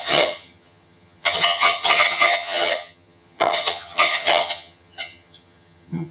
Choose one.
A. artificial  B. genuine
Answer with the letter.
A